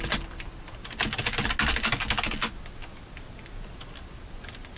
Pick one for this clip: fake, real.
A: real